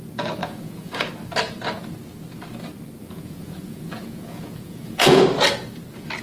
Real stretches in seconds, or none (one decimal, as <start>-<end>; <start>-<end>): 0.0-0.4; 1.1-3.0; 5.2-6.2